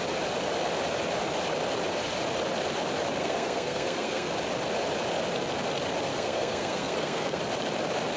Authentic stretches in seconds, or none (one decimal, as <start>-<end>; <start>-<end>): 0.0-3.2; 4.3-6.1; 7.4-8.2